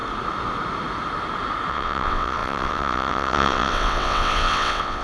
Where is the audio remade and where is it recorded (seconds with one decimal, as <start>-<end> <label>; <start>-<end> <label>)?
0.0-1.7 recorded; 1.7-5.0 remade